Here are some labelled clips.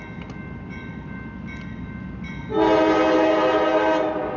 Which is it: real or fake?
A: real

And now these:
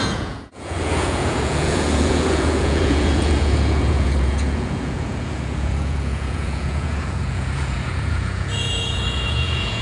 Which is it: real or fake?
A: fake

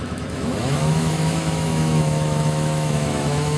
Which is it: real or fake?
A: fake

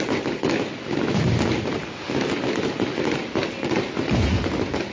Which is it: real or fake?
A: real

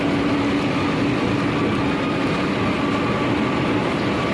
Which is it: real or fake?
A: real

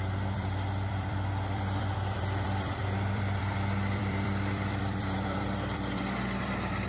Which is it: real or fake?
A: fake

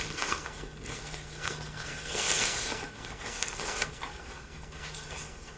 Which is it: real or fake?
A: fake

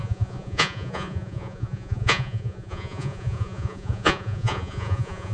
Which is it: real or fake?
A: fake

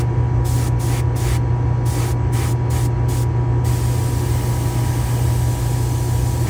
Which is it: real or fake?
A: real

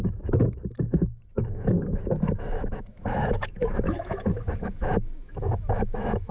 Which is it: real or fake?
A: fake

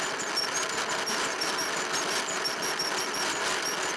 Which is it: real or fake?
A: real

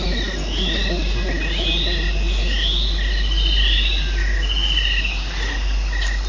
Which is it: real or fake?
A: real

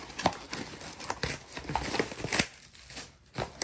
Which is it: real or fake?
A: real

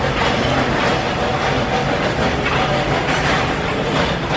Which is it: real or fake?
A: real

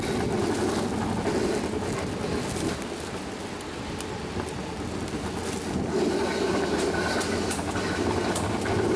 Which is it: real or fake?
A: real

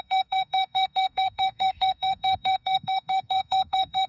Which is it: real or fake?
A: fake